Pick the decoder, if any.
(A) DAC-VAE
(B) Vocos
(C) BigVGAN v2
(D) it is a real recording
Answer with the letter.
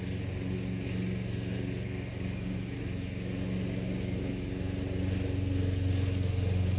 D